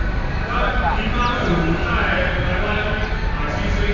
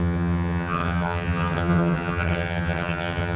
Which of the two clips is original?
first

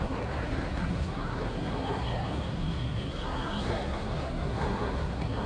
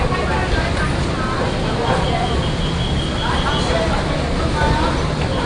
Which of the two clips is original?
second